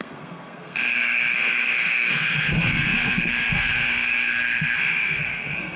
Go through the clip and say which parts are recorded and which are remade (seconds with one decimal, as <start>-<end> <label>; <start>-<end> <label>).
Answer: 0.0-5.8 remade